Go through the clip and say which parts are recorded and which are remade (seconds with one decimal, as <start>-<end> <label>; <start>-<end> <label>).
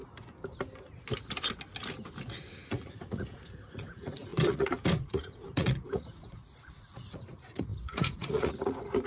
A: 0.0-2.7 recorded; 2.7-9.1 remade